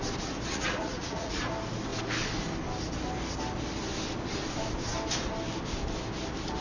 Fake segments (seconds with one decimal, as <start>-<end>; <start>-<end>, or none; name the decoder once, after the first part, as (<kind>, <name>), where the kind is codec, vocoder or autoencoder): 0.5-1.4 (vocoder, Vocos)